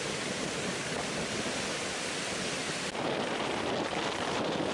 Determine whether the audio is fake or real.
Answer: real